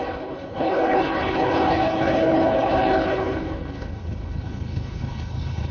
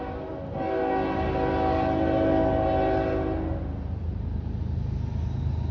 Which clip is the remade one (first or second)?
first